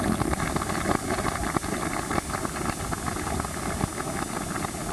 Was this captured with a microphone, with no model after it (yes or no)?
yes